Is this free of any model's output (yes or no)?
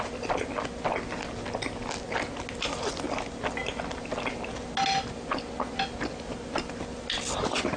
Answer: yes